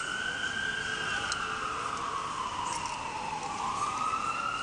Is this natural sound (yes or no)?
yes